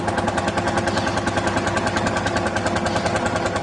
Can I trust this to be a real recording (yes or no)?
yes